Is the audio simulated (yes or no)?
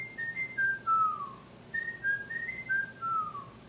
no